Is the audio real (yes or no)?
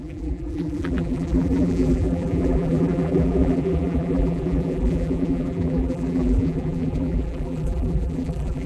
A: no